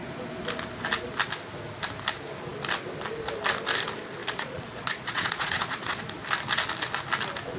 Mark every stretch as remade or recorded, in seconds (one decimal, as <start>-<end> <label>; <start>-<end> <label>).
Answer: 0.0-4.2 recorded; 4.2-6.0 remade; 6.0-7.6 recorded